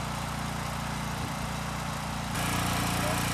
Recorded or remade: recorded